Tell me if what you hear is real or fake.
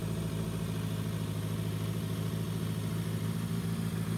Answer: real